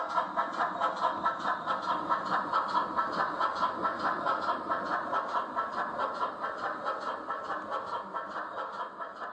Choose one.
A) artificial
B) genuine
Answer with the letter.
B